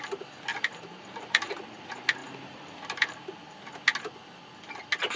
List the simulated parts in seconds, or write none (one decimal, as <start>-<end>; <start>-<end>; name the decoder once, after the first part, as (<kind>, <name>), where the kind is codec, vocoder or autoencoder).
0.5-1.5 (vocoder, BigVGAN v2); 2.2-3.4